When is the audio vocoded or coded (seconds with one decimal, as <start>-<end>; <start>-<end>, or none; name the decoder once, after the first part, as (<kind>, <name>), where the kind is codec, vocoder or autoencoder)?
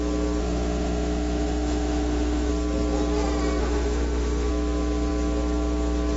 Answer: 0.4-2.5 (autoencoder, DAC-VAE); 3.6-4.5